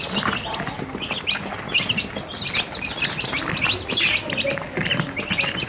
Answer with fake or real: real